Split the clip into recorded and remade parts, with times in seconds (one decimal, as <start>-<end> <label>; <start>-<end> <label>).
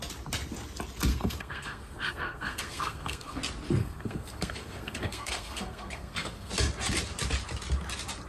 0.0-1.1 recorded; 1.1-3.4 remade; 3.4-3.8 recorded; 3.8-6.5 remade; 6.5-8.3 recorded